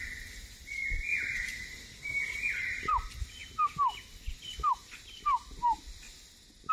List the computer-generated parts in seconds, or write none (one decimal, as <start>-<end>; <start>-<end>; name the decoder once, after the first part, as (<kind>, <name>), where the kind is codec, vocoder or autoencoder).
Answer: 1.1-2.9 (vocoder, BigVGAN v2)